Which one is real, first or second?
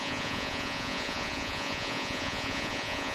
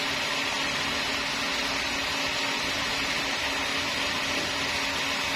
second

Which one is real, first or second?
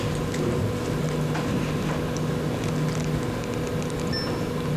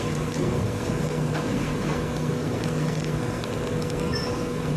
first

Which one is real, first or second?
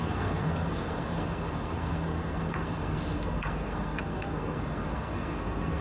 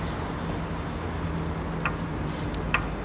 second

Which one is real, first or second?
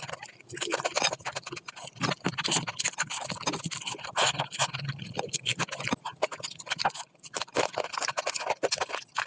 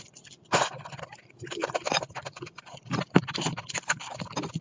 first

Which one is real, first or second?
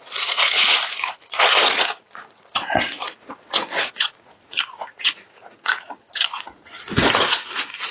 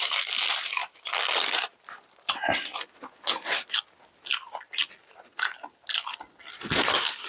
second